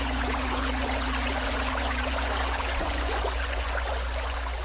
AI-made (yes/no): yes